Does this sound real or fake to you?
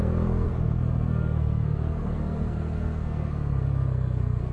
fake